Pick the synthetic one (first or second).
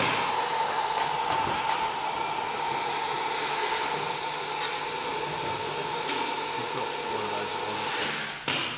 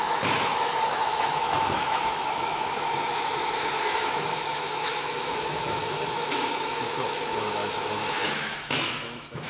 second